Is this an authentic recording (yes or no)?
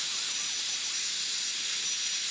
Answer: yes